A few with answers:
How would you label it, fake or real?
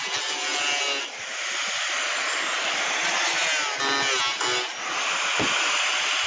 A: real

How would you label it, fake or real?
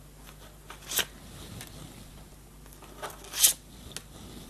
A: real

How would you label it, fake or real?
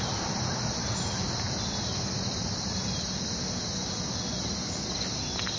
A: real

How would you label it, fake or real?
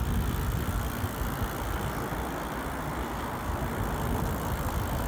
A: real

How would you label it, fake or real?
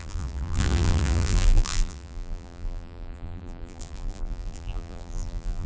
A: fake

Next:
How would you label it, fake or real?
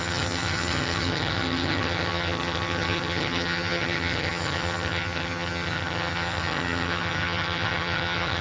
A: fake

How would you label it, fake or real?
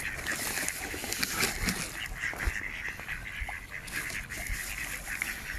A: real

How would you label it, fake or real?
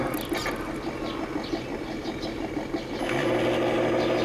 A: real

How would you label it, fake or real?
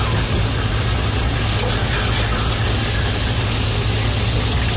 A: real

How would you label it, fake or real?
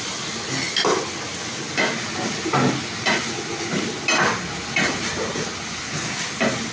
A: real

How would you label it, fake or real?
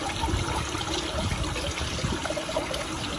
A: real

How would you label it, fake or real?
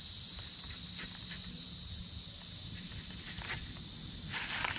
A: real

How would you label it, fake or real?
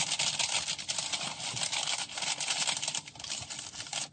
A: real